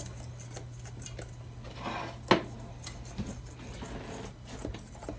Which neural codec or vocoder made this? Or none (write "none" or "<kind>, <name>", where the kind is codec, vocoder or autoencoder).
none